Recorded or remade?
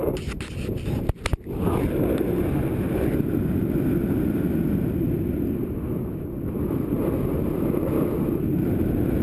recorded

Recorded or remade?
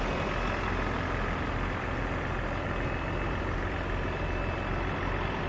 recorded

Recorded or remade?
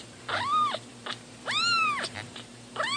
remade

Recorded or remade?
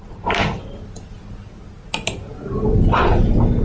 recorded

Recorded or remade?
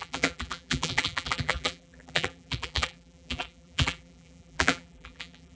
remade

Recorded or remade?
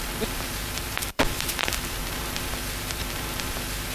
remade